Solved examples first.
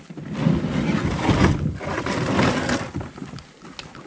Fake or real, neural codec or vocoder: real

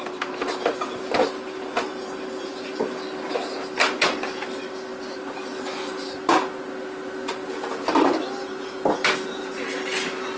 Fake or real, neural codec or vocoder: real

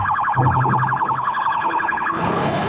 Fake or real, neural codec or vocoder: fake, codec, HILCodec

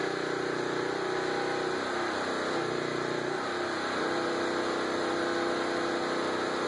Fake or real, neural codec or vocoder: real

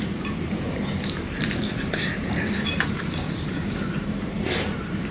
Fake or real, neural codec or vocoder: fake, vocoder, BigVGAN v2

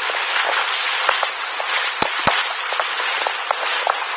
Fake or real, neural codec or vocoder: real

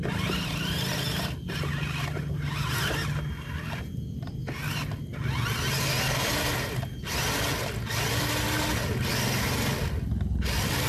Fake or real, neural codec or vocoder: real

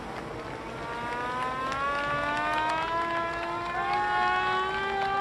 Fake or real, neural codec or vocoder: real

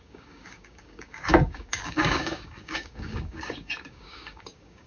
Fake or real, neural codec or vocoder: fake, codec, DAC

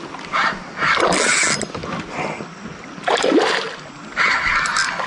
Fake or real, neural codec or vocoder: real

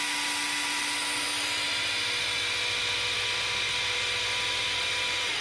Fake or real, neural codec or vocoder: real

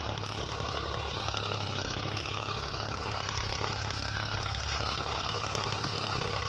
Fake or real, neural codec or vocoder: fake, codec, SNAC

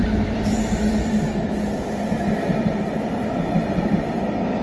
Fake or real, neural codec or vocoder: real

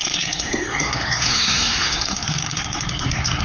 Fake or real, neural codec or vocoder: fake, codec, SNAC